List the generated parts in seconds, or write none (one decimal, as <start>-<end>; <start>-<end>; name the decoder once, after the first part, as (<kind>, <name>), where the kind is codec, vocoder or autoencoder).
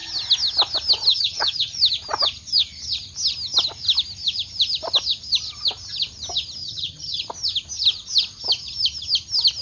1.1-1.8 (vocoder, HiFi-GAN); 6.6-7.2